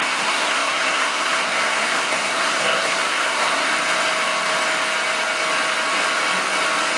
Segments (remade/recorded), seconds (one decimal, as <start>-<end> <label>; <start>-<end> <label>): 0.0-3.7 remade; 3.7-7.0 recorded